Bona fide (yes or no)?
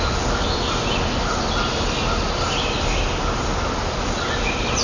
yes